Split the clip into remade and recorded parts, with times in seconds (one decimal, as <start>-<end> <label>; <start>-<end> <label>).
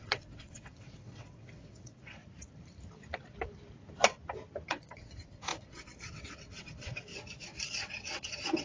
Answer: 0.0-2.2 remade; 2.2-4.7 recorded; 4.7-7.1 remade; 7.1-7.7 recorded; 7.7-8.6 remade